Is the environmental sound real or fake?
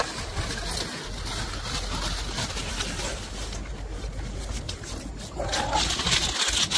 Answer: real